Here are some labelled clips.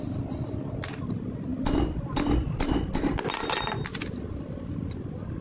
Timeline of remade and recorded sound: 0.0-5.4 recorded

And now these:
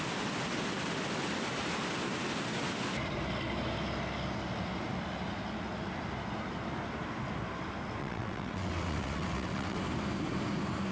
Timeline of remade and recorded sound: 0.0-8.0 recorded; 8.0-9.8 remade; 9.8-10.9 recorded

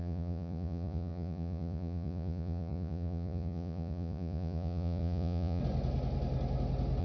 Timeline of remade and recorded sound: 0.0-5.6 remade; 5.6-7.0 recorded